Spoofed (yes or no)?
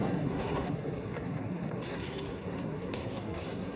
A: yes